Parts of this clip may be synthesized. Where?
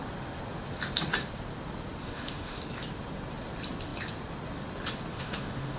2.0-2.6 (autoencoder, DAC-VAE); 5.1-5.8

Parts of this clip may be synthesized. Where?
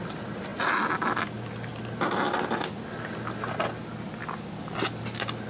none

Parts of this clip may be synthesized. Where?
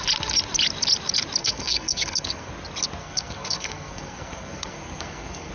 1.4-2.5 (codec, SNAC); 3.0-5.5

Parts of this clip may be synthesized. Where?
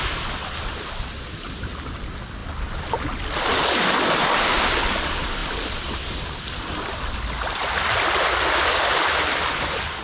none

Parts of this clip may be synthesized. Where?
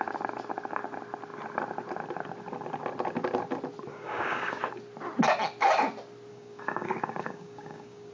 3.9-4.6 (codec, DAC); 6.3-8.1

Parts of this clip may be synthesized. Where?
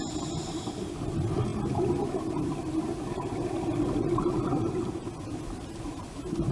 none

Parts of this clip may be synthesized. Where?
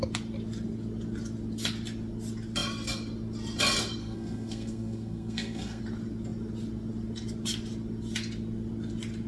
4.0-5.8 (codec, SNAC)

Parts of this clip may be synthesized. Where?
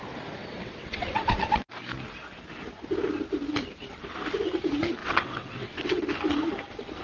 0.4-1.7 (vocoder, WaveNeXt); 5.0-6.1